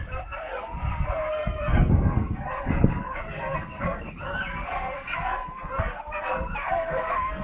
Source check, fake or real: fake